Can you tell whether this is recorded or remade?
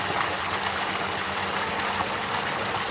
recorded